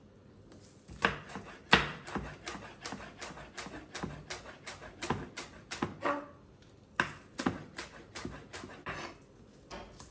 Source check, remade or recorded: recorded